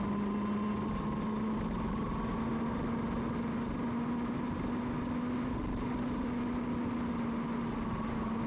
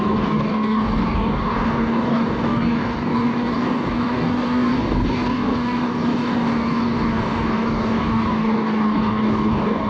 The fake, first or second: second